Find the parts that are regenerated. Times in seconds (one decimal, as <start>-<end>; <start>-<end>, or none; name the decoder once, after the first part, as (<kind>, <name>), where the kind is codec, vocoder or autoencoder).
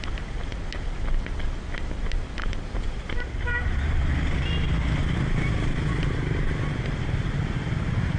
2.4-4.1 (vocoder, BigVGAN v2); 5.0-8.2